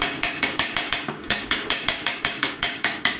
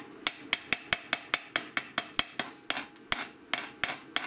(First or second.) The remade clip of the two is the first